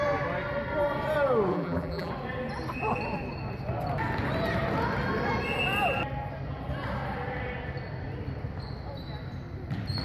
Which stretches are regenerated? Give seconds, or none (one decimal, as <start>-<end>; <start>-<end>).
1.5-2.1